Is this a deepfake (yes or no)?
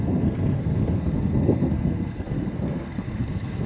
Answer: yes